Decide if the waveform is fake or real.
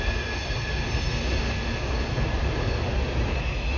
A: real